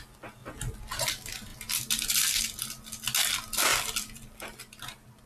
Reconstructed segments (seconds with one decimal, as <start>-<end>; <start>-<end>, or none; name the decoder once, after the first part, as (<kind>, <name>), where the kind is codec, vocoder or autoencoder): 3.7-5.3 (vocoder, BigVGAN v2)